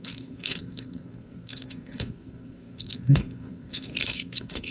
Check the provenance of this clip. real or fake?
fake